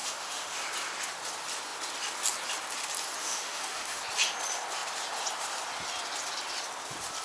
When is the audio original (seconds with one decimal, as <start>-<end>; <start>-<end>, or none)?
0.6-3.2; 4.0-7.2